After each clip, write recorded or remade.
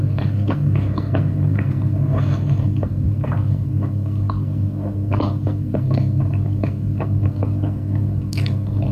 remade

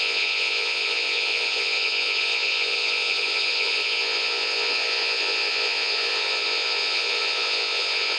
remade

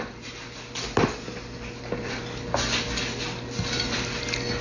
recorded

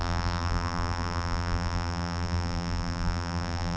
remade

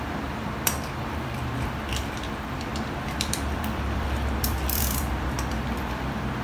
remade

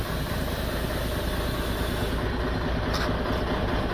recorded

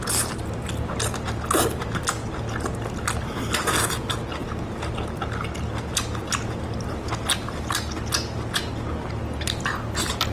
recorded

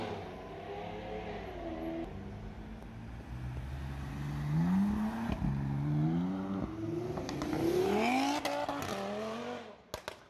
recorded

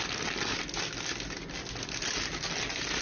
recorded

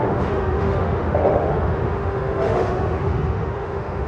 remade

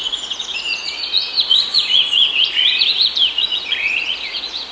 remade